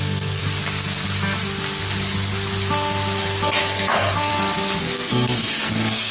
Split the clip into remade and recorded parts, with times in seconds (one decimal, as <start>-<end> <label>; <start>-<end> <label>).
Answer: 0.0-0.4 remade; 0.4-3.6 recorded; 3.6-4.3 remade; 4.3-4.8 recorded; 4.8-6.1 remade